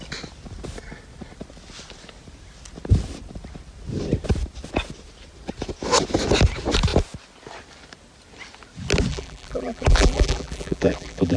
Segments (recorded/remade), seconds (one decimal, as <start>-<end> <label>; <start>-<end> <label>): 0.0-9.1 recorded; 9.1-11.4 remade